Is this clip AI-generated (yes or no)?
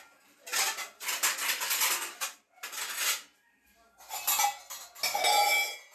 no